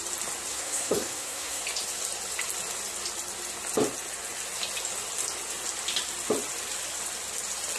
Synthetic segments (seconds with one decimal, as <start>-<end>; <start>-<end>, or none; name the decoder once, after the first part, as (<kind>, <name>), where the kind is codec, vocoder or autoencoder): 0.5-1.6 (codec, SNAC)

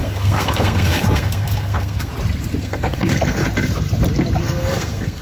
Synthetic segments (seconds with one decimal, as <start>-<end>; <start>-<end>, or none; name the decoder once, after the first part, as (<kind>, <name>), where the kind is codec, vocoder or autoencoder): 0.0-2.1 (codec, SNAC); 2.6-3.4; 4.4-5.2